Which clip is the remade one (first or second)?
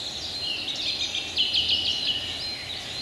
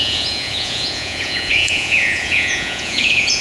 second